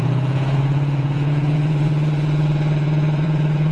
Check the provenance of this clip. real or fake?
fake